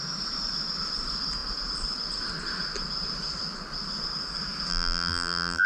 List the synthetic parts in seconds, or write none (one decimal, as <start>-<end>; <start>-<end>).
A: 4.7-5.7